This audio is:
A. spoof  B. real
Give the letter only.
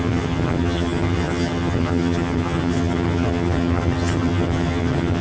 A